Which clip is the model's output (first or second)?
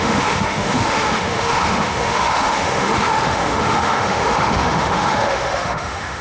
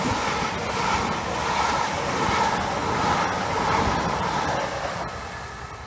first